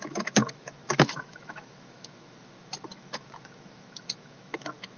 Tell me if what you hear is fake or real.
fake